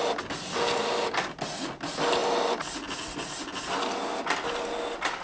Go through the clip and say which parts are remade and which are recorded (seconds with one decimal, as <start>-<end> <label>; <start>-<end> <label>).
0.0-5.2 recorded